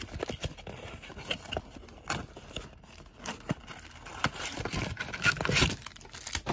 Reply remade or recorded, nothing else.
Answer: recorded